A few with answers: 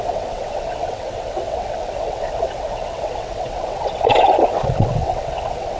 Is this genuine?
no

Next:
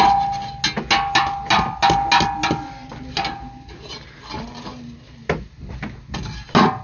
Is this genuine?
yes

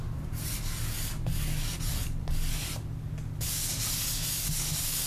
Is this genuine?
yes